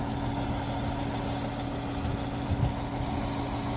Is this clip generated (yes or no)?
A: no